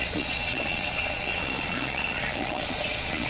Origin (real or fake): fake